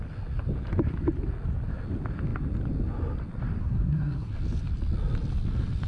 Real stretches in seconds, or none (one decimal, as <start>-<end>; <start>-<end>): 0.0-3.6; 4.3-5.9